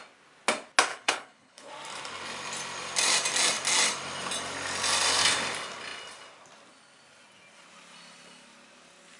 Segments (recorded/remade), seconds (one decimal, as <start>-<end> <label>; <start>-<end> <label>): 0.0-0.9 recorded; 0.9-1.7 remade; 1.7-9.2 recorded